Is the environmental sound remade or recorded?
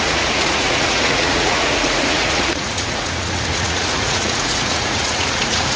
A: remade